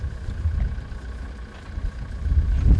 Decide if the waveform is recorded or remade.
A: recorded